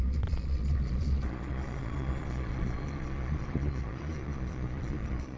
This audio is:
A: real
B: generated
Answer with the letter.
B